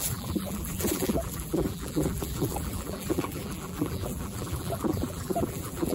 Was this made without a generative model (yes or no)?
no